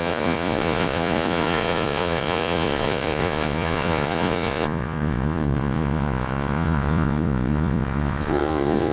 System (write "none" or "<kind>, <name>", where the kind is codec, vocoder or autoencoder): vocoder, Vocos